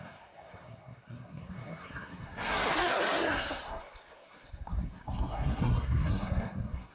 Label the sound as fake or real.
fake